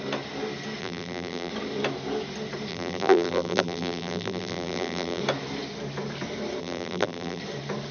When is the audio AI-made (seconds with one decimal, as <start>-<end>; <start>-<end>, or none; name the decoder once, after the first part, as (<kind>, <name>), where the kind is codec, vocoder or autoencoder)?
0.8-1.5 (vocoder, BigVGAN v2); 2.7-5.2; 6.6-7.4